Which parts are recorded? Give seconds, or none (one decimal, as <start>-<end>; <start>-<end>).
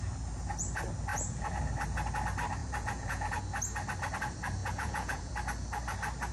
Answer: 0.0-1.1; 1.6-2.6; 3.4-4.6; 5.3-6.3